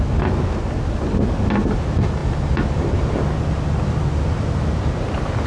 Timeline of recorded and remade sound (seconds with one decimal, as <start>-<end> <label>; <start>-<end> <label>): 0.0-5.5 recorded